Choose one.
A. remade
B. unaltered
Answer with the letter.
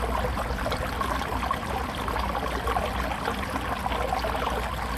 B